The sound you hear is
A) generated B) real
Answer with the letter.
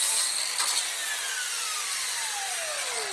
B